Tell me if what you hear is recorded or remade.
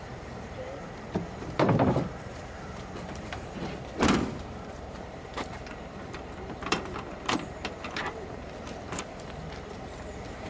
remade